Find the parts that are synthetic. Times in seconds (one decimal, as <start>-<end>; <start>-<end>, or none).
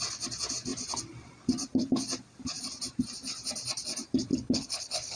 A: 4.3-5.2